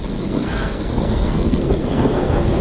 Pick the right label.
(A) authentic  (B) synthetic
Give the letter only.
B